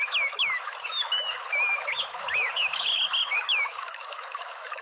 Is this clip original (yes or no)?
no